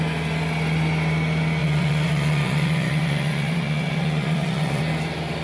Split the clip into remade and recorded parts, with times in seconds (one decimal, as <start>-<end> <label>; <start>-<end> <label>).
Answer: 0.0-1.6 recorded; 1.6-4.8 remade; 4.8-5.4 recorded